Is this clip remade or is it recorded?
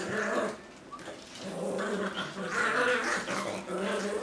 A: recorded